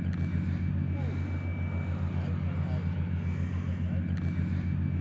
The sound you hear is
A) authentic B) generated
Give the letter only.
A